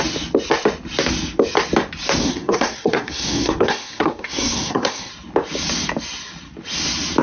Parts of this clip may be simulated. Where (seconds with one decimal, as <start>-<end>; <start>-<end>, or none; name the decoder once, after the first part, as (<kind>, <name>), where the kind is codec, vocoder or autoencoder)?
2.2-5.1 (codec, SNAC)